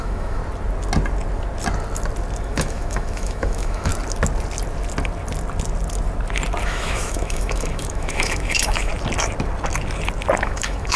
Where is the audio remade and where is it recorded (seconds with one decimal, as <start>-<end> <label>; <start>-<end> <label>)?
0.0-0.4 remade; 0.4-2.4 recorded; 2.4-3.9 remade; 3.9-6.6 recorded; 6.6-8.9 remade; 8.9-10.4 recorded; 10.4-11.0 remade